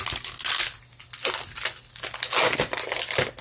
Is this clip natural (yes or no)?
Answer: yes